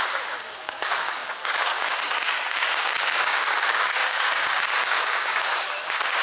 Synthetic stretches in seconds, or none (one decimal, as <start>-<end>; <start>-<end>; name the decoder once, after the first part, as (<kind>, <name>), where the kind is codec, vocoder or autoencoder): 0.0-6.2 (codec, DAC)